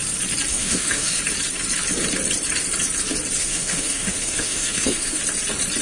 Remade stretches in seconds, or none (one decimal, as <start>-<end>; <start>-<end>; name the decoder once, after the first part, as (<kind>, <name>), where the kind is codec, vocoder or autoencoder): 0.5-1.2 (autoencoder, DAC-VAE); 3.4-5.2